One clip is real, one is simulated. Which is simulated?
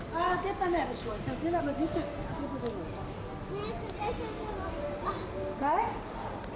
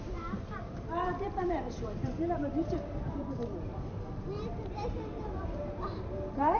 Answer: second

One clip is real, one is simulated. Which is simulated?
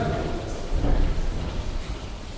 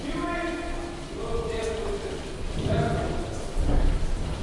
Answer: first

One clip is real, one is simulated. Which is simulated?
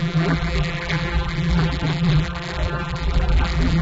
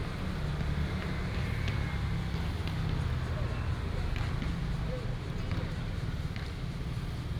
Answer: first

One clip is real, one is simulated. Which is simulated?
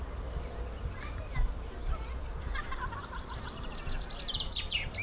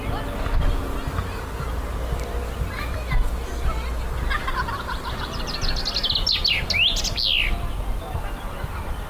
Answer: first